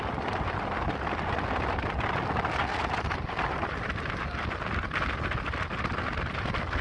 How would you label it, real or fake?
real